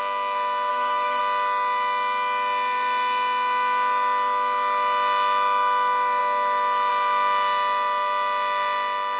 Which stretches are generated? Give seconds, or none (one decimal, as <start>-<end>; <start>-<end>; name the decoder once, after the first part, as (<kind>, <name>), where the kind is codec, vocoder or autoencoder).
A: 0.7-1.2 (codec, SNAC)

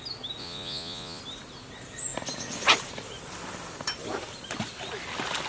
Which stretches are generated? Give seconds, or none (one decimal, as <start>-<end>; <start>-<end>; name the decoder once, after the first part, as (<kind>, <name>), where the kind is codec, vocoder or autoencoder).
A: 0.4-1.2 (vocoder, Vocos)

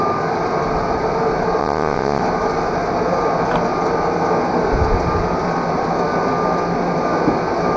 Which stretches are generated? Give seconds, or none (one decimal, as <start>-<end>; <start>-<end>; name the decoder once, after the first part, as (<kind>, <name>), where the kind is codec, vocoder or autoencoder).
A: 1.6-2.2 (vocoder, WaveNeXt)

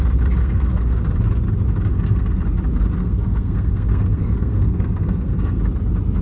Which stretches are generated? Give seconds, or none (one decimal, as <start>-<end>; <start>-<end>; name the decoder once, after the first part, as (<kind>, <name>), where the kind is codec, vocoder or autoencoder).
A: 0.4-1.0 (codec, SNAC); 1.9-2.4; 3.0-5.6

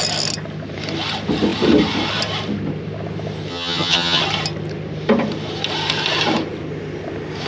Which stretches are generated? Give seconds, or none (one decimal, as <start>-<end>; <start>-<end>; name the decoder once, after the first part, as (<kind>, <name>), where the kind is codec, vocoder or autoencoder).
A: 3.5-4.2 (vocoder, HiFi-GAN)

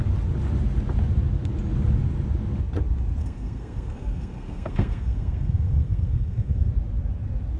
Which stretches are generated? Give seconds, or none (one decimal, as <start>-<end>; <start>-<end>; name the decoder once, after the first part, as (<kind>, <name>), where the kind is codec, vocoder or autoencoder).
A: 3.2-6.7 (codec, SNAC)

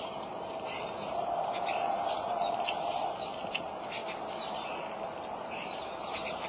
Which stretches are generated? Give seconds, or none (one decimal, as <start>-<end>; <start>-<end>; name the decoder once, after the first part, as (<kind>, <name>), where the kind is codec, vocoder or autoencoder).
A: 0.0-4.0 (vocoder, BigVGAN v2); 5.5-6.5